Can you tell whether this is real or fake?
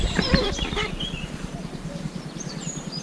fake